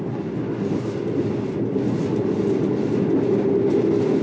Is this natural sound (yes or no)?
yes